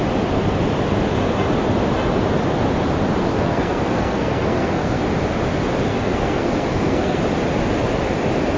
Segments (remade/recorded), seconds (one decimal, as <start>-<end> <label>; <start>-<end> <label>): 0.0-3.2 recorded; 3.2-5.0 remade; 5.0-5.9 recorded; 5.9-7.2 remade; 7.2-8.6 recorded